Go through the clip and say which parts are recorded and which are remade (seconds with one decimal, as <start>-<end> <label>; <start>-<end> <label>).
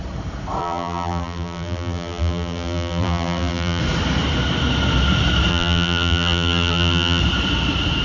0.0-0.6 recorded; 0.6-3.8 remade; 3.8-5.5 recorded; 5.5-7.2 remade; 7.2-8.0 recorded